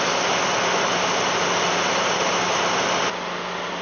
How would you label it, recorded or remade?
recorded